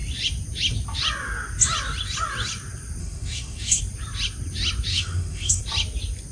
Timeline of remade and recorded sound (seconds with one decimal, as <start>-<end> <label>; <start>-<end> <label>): 0.0-3.0 recorded; 3.0-3.8 remade; 3.8-4.9 recorded; 4.9-5.6 remade; 5.6-6.3 recorded